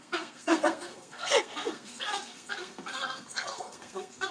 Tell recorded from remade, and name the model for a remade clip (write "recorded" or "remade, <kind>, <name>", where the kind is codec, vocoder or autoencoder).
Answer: remade, codec, SNAC